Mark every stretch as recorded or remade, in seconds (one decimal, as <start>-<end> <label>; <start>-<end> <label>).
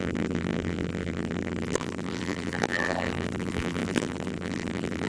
0.0-5.1 remade